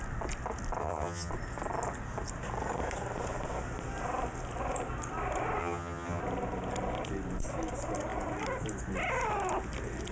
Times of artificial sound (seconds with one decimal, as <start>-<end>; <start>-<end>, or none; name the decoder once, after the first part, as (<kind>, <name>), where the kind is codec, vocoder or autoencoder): 0.8-1.3 (vocoder, HiFi-GAN); 5.6-6.2